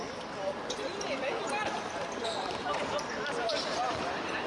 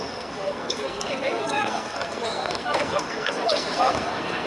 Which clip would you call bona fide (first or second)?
first